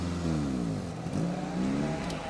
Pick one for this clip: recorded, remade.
recorded